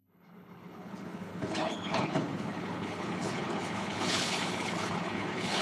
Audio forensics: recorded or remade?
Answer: remade